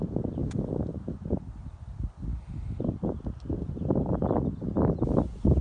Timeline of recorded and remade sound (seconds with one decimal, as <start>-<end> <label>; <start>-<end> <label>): 0.0-5.6 recorded